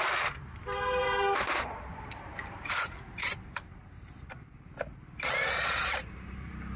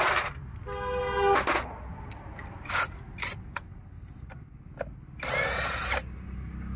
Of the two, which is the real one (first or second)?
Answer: second